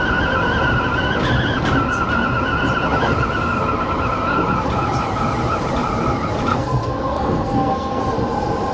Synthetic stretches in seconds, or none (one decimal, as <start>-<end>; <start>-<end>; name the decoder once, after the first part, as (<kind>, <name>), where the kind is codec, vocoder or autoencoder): 6.5-8.0 (codec, SNAC)